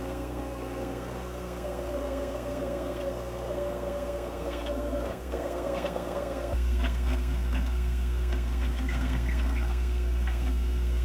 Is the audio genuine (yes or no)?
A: no